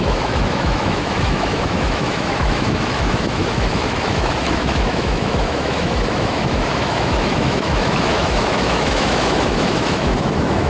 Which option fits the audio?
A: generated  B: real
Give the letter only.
A